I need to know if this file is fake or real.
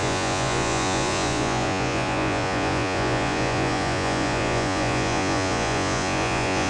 fake